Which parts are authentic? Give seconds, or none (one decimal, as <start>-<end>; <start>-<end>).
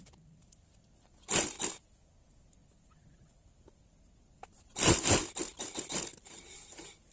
0.0-7.1